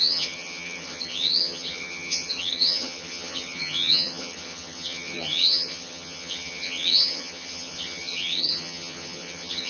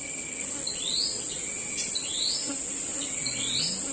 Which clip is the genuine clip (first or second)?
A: second